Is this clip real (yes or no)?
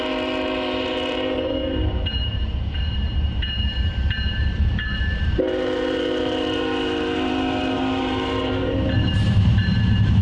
no